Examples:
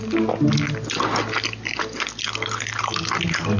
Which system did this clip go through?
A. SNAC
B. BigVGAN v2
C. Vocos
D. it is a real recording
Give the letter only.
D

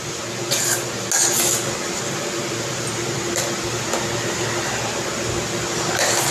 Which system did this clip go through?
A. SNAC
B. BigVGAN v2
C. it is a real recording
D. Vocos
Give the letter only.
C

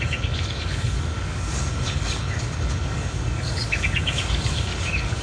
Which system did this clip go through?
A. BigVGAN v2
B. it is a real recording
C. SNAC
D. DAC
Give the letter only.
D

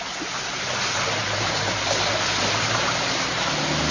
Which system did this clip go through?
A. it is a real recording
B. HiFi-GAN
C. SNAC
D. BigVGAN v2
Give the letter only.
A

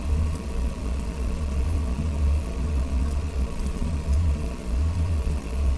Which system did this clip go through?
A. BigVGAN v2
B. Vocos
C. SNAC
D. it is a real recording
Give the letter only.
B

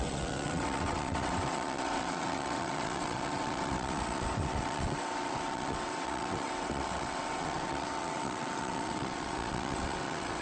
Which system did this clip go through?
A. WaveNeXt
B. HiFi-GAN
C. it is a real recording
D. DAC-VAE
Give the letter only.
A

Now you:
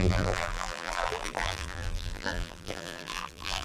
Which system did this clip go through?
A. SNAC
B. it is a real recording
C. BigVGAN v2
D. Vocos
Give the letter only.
C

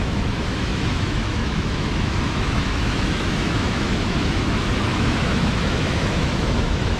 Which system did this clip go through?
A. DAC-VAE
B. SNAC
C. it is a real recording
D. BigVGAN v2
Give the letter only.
A